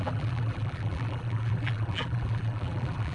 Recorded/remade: remade